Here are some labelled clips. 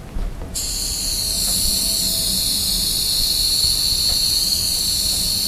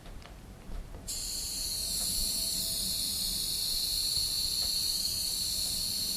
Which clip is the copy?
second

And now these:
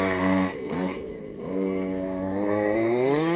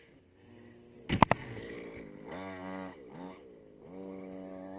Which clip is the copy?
first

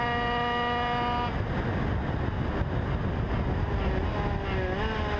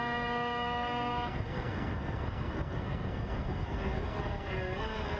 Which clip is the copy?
second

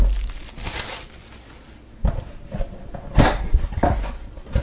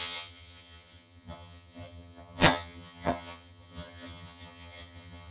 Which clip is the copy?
second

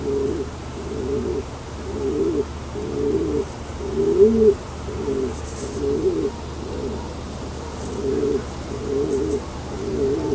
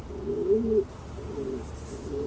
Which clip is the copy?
second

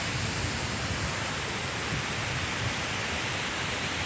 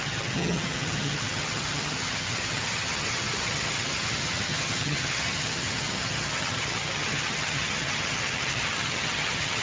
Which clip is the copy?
second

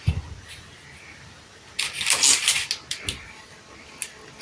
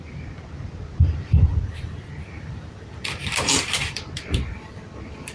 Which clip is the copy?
second